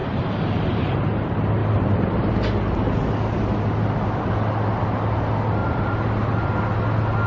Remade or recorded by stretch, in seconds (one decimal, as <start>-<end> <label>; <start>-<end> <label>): 0.0-0.8 remade; 0.8-1.6 recorded; 1.6-2.3 remade; 2.3-5.6 recorded; 5.6-6.1 remade; 6.1-7.3 recorded